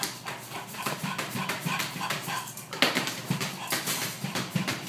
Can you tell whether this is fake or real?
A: fake